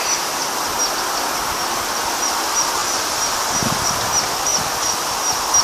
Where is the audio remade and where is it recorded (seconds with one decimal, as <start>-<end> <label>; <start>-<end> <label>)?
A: 0.0-2.8 recorded; 2.8-3.4 remade; 3.4-4.5 recorded; 4.5-5.1 remade; 5.1-5.6 recorded